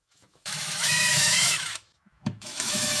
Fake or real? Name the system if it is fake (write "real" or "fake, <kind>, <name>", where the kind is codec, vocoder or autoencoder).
fake, autoencoder, DAC-VAE